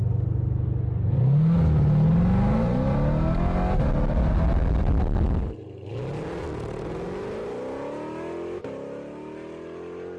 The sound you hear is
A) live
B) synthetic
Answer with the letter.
A